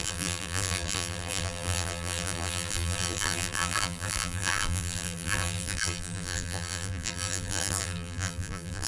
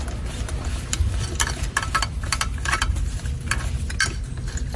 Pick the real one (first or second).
second